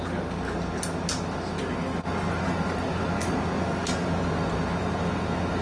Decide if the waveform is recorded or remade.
recorded